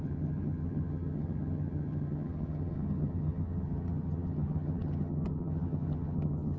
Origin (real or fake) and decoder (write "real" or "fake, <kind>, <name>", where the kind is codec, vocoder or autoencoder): fake, vocoder, HiFi-GAN